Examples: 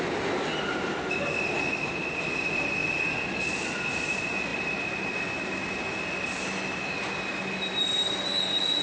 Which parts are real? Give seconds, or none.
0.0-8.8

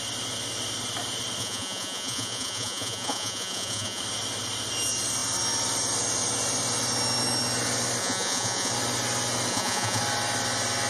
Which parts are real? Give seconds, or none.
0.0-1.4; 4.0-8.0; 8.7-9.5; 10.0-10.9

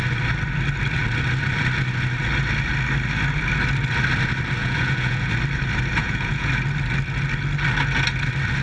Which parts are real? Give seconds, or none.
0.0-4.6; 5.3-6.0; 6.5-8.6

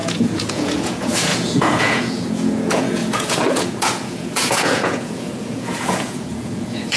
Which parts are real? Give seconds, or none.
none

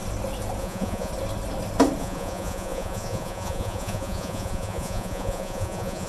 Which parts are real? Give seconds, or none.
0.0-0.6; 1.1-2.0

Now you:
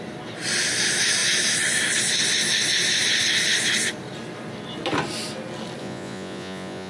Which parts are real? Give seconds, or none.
0.0-5.8